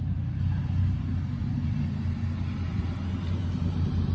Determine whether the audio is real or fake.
real